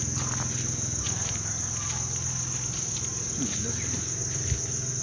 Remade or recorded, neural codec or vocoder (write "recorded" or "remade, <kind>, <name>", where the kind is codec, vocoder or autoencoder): recorded